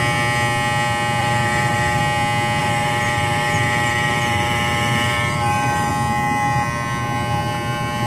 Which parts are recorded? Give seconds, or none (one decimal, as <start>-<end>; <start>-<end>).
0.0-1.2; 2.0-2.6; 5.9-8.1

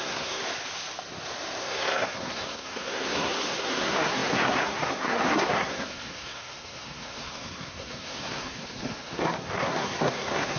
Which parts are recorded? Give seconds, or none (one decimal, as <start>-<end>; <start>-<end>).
0.4-1.6

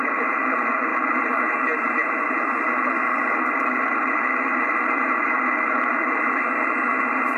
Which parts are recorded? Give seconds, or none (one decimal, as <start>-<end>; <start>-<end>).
0.0-0.9; 1.8-7.4